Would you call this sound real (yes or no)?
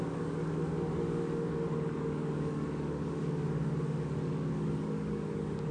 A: no